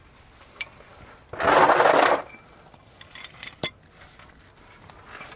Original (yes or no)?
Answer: yes